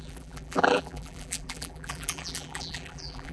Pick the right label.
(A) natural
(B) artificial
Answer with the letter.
B